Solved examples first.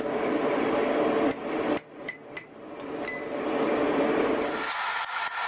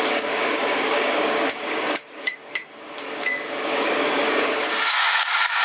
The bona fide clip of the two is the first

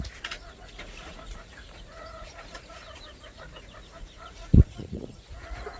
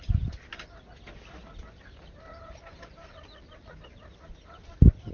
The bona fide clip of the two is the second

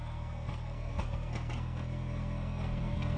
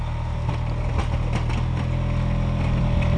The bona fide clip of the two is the second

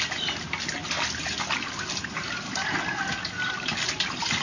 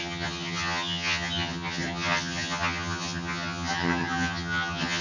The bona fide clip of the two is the first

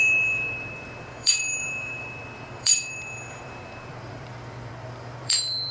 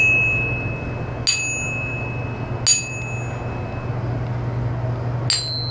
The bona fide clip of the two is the second